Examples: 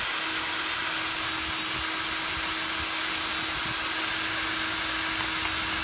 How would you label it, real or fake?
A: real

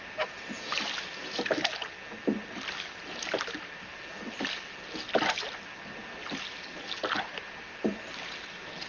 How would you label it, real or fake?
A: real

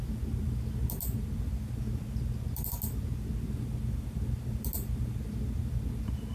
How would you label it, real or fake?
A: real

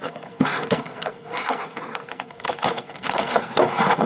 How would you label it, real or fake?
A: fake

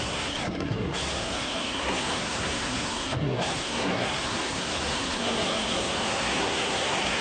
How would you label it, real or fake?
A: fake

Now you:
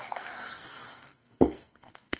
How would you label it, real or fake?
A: fake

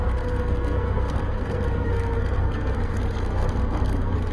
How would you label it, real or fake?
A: fake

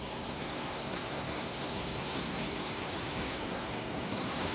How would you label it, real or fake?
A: fake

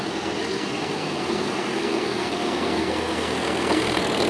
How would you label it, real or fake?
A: fake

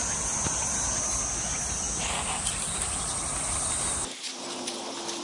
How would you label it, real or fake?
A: real